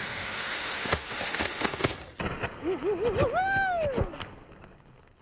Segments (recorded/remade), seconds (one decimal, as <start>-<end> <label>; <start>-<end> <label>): 0.0-1.9 remade; 1.9-5.2 recorded